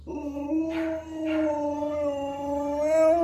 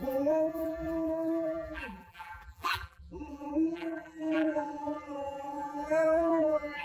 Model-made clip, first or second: second